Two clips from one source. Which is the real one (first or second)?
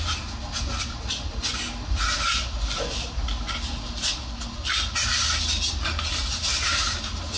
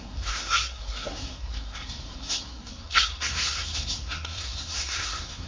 first